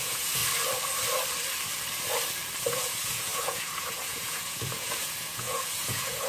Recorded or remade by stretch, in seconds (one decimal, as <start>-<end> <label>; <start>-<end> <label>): 0.0-0.4 remade; 0.4-2.6 recorded; 2.6-6.3 remade